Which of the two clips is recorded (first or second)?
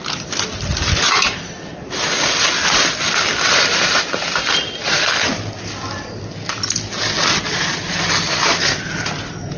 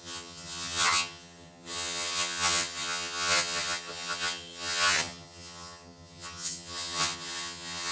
first